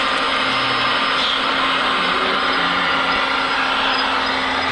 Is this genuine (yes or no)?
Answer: yes